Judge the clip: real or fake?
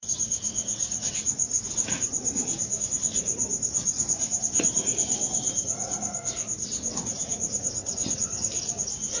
fake